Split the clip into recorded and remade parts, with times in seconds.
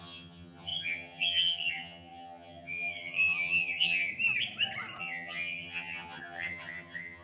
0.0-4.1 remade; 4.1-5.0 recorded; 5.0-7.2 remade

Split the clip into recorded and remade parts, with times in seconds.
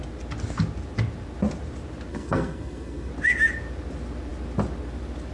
0.0-2.1 recorded; 2.1-3.1 remade; 3.1-5.3 recorded